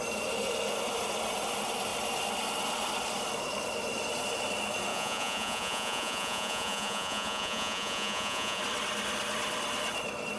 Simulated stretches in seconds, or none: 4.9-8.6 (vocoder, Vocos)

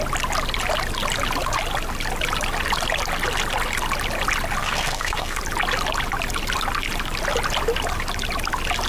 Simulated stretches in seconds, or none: 4.6-5.4 (codec, SNAC)

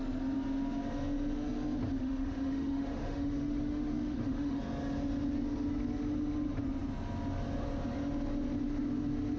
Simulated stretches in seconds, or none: 2.0-4.6 (autoencoder, DAC-VAE)